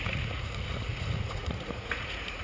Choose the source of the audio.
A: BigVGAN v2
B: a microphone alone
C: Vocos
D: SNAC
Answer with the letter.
C